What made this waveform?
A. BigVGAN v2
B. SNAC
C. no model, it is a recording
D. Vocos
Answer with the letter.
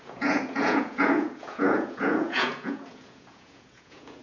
D